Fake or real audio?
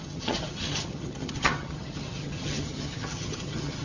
fake